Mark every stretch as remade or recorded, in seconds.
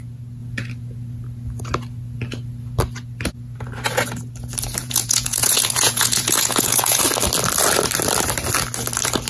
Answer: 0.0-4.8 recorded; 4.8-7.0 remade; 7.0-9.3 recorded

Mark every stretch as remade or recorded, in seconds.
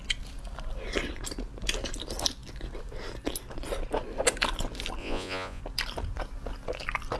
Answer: 0.0-5.0 recorded; 5.0-5.6 remade; 5.6-7.2 recorded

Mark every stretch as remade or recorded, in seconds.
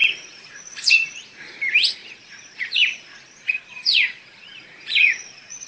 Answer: 0.0-1.6 remade; 1.6-2.0 recorded; 2.0-5.7 remade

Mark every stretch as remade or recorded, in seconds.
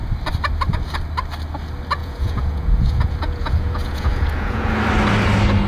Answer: 0.0-2.0 recorded; 2.0-4.7 remade; 4.7-5.7 recorded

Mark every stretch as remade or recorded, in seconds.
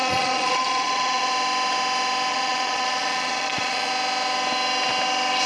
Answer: 0.0-1.3 remade; 1.3-2.3 recorded; 2.3-3.9 remade; 3.9-5.5 recorded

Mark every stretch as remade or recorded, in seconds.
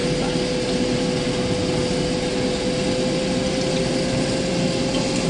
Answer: 0.0-5.3 recorded